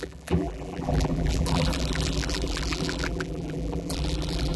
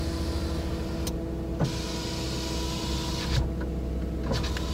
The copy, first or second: first